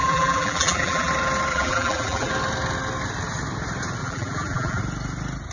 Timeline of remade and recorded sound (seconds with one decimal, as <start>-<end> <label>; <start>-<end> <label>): 0.0-1.1 remade; 1.1-1.5 recorded; 1.5-2.3 remade; 2.3-4.0 recorded; 4.0-4.8 remade; 4.8-5.5 recorded